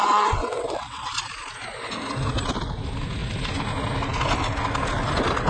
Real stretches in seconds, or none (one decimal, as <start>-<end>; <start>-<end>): 1.1-5.5